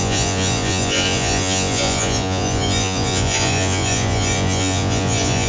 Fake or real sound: fake